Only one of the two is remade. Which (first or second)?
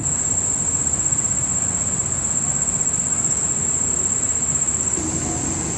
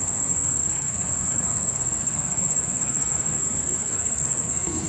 second